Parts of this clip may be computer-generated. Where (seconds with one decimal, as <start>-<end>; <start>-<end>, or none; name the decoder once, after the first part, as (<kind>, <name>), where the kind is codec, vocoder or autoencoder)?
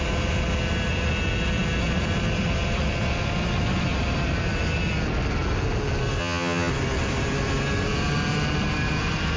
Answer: 6.2-6.7 (vocoder, HiFi-GAN)